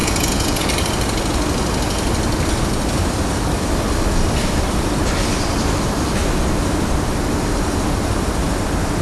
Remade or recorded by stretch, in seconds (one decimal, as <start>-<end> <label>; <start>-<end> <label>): 0.0-0.7 remade; 0.7-9.0 recorded